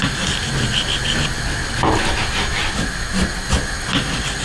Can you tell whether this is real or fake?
real